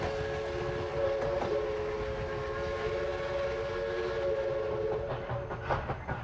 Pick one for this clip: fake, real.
real